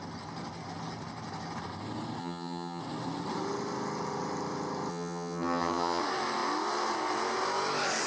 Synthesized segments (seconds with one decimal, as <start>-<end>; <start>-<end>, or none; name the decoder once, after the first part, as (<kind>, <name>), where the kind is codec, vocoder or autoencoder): 2.2-2.8 (vocoder, HiFi-GAN); 4.9-6.0